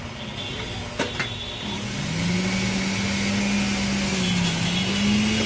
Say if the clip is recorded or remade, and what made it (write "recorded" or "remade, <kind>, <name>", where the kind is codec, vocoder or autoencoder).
recorded